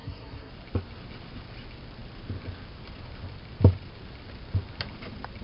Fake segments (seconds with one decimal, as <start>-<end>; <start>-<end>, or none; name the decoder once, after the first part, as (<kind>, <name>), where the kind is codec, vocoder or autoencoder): 0.0-0.5 (codec, SNAC)